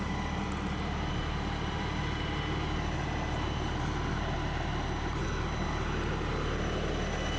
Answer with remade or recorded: recorded